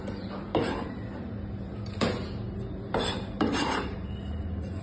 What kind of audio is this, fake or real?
fake